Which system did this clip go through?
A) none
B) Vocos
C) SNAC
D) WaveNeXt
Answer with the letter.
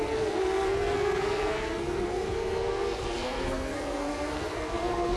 C